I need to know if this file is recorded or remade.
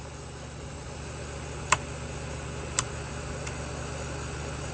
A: recorded